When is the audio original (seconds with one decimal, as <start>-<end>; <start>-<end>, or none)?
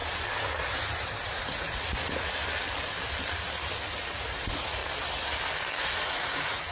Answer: 0.0-1.3; 2.4-3.8; 4.8-5.8